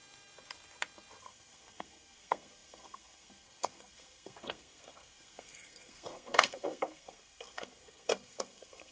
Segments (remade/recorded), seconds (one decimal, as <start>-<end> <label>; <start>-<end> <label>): 0.0-1.2 recorded; 1.2-8.9 remade